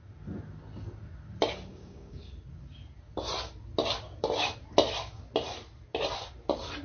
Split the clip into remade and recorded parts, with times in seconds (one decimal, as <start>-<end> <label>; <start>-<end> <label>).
0.0-1.7 recorded; 1.7-2.3 remade; 2.3-6.8 recorded